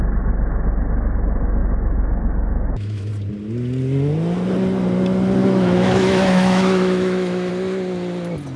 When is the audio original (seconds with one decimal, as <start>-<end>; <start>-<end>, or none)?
0.0-1.6; 3.1-5.4; 7.5-8.6

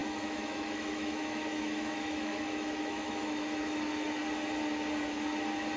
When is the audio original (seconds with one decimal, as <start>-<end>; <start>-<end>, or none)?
4.2-5.8

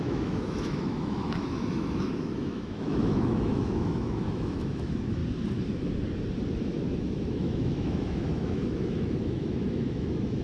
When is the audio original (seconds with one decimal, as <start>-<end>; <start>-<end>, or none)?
5.2-7.0

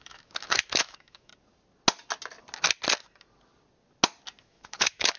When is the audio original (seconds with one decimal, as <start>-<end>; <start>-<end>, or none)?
1.3-4.4